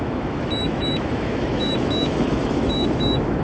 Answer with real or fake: fake